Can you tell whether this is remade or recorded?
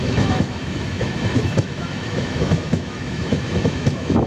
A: remade